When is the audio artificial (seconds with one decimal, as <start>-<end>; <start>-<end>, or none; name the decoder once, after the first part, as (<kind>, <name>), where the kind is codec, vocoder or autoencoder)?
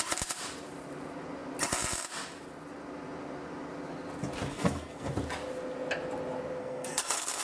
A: 4.5-5.1 (codec, SNAC); 6.6-7.4